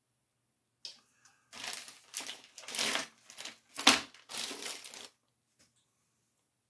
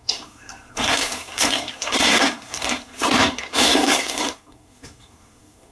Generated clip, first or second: second